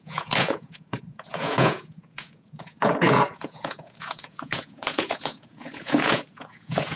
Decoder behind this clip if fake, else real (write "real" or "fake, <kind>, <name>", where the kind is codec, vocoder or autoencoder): fake, vocoder, Vocos